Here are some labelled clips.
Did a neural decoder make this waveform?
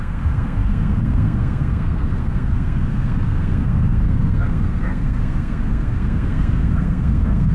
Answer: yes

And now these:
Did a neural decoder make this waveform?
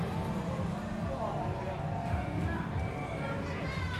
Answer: no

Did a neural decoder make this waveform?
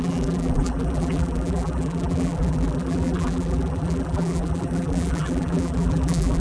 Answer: yes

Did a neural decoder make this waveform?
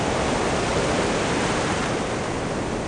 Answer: no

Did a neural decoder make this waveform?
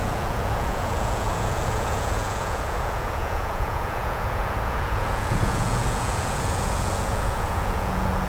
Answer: yes